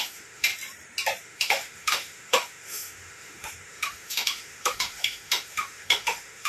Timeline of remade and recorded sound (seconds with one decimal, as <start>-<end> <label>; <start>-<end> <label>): 0.0-0.5 remade; 0.5-1.2 recorded; 1.2-6.5 remade